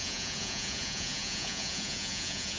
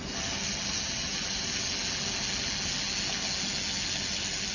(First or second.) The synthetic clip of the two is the first